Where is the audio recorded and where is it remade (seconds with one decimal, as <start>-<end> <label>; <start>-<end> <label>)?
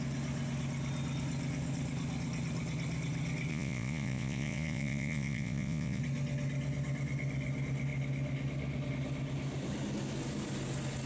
0.0-3.5 recorded; 3.5-6.0 remade; 6.0-11.1 recorded